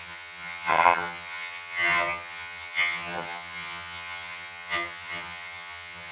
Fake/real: fake